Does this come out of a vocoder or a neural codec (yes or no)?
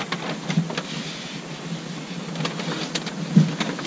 no